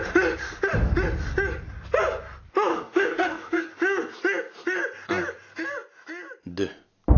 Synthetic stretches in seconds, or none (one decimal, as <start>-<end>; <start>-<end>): 2.7-3.7

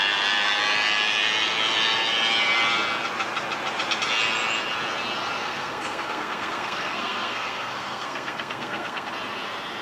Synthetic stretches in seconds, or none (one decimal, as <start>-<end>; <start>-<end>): 5.4-9.1

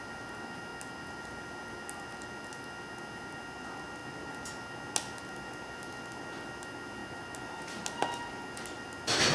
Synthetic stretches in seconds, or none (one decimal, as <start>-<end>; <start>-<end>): none

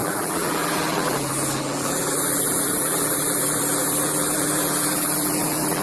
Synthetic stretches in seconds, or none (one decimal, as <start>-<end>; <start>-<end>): 0.0-5.8